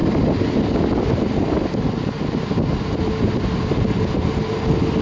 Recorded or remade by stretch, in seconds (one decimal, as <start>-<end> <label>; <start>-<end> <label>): 0.0-5.0 recorded